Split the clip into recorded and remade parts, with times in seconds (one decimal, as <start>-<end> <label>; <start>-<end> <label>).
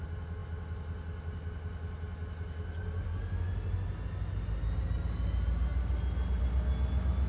0.0-7.3 recorded